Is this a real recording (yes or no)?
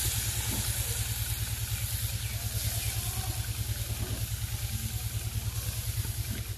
yes